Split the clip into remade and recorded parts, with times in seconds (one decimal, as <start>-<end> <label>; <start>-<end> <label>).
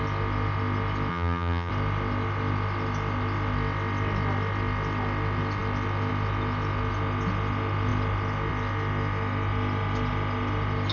0.0-1.1 recorded; 1.1-1.7 remade; 1.7-10.9 recorded